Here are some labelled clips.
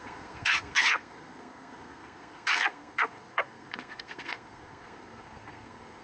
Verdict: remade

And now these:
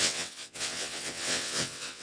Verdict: remade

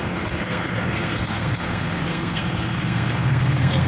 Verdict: remade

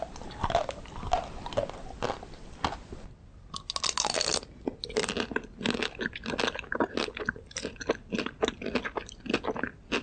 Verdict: recorded